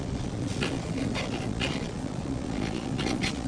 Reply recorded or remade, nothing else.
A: remade